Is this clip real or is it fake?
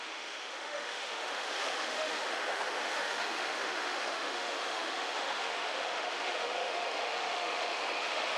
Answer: fake